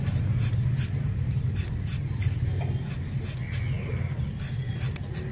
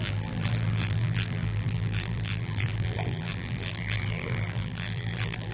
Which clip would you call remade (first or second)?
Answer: second